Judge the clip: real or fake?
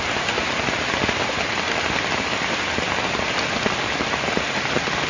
real